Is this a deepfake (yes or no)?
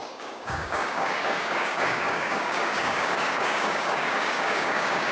yes